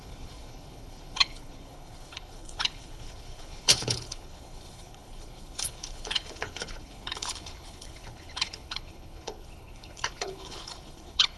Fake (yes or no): yes